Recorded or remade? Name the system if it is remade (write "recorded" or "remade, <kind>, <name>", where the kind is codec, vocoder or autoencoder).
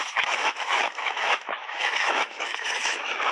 remade, autoencoder, DAC-VAE